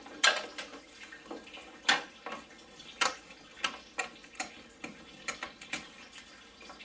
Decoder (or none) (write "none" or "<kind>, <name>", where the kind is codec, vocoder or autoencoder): none